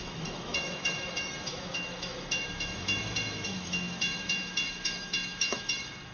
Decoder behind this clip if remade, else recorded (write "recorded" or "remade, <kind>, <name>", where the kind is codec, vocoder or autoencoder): remade, autoencoder, DAC-VAE